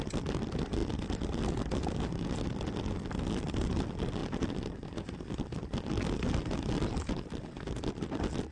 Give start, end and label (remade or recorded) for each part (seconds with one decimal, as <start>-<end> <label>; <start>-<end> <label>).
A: 0.0-8.5 recorded